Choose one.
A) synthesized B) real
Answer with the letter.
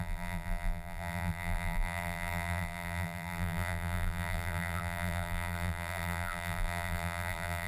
A